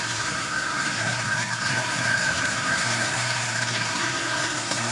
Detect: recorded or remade remade